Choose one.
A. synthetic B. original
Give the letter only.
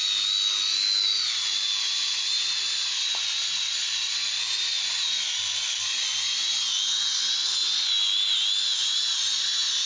B